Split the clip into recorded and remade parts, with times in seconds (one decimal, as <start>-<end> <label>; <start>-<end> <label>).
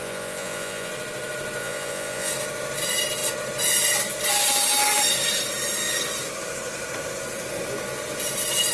0.0-0.9 remade; 0.9-1.6 recorded; 1.6-2.3 remade; 2.3-8.7 recorded